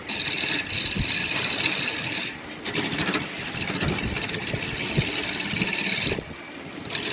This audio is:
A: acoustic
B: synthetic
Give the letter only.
A